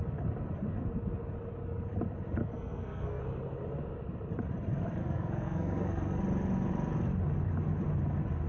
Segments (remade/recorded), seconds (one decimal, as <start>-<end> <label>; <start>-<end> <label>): 0.0-2.4 recorded; 2.4-3.2 remade; 3.2-5.0 recorded; 5.0-6.2 remade; 6.2-8.5 recorded